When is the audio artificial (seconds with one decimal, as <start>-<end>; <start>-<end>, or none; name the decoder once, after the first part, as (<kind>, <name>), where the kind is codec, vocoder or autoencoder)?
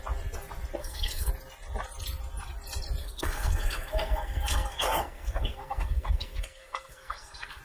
0.8-1.3 (codec, SNAC); 3.0-7.6